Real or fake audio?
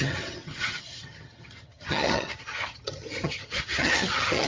fake